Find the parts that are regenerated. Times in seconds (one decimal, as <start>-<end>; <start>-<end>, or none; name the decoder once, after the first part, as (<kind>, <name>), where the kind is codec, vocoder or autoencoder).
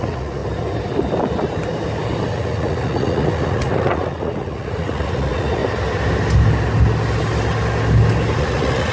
0.0-0.4 (vocoder, Vocos); 2.3-5.6; 8.4-8.9